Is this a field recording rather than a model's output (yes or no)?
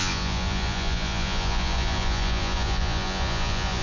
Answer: no